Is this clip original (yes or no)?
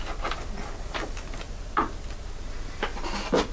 yes